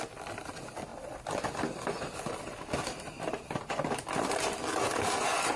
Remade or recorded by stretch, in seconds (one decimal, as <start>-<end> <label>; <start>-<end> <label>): 0.0-5.6 recorded